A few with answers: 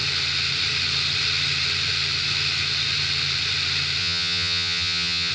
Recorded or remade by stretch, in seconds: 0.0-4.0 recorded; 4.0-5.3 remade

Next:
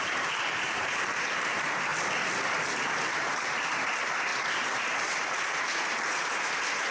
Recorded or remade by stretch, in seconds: 0.0-1.9 remade; 1.9-3.1 recorded; 3.1-6.9 remade

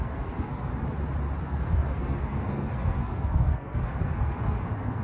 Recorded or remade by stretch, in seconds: 0.0-0.7 remade; 0.7-1.4 recorded; 1.4-5.0 remade

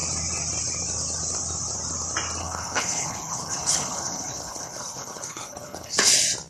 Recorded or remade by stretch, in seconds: 0.0-2.4 recorded; 2.4-6.1 remade; 6.1-6.5 recorded

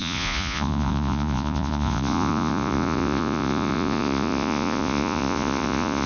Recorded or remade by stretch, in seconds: 0.0-6.1 remade

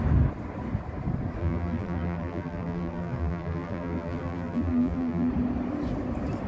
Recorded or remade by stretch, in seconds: 0.0-1.4 recorded; 1.4-5.3 remade; 5.3-6.5 recorded

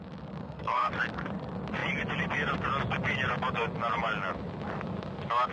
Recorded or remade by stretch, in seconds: 0.0-0.4 recorded; 0.4-0.9 remade; 0.9-5.5 recorded